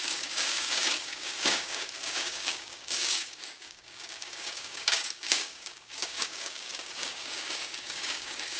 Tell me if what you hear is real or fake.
fake